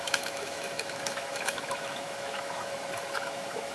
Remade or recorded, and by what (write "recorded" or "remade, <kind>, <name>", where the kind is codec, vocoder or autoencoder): remade, autoencoder, DAC-VAE